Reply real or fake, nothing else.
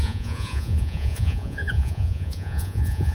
fake